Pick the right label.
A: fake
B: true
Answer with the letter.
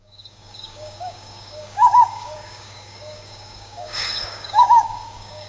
A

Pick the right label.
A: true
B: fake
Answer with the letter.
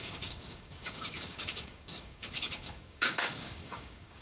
B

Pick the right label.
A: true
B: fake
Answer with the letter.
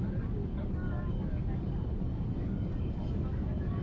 B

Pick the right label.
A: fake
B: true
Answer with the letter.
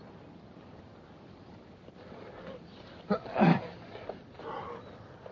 B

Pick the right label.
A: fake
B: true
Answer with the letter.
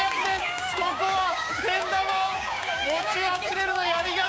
A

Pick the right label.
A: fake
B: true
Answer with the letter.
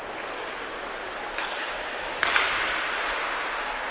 B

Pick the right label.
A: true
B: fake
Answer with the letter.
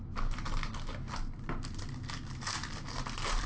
A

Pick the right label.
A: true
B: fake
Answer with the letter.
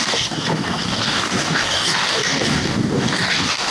B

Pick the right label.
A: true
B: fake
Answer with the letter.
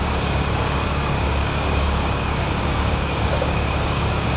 B